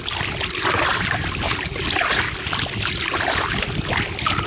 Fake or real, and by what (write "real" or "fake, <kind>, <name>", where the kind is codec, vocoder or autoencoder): real